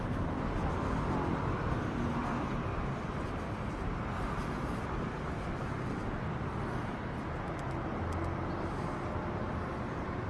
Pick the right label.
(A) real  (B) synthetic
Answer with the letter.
A